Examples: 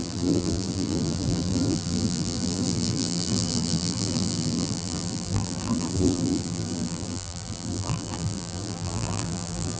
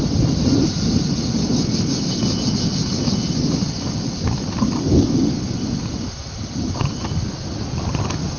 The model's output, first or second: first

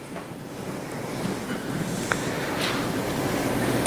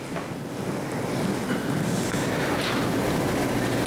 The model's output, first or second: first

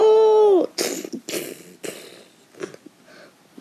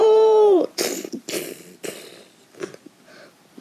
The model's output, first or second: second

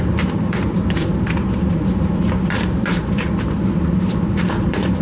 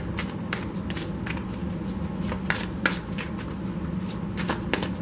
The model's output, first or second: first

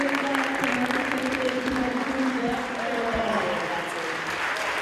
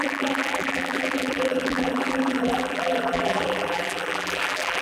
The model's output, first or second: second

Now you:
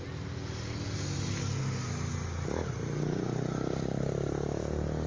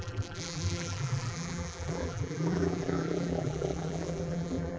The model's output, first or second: second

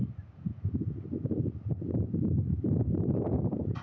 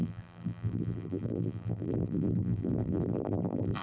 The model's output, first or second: second